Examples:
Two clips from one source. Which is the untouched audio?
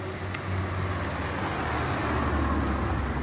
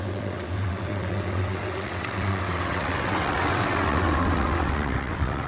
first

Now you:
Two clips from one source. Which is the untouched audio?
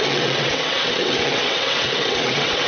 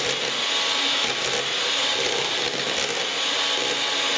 second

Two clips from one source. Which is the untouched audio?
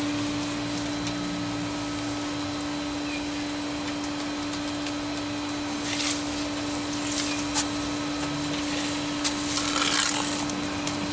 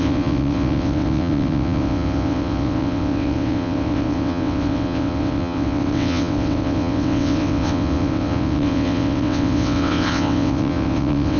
first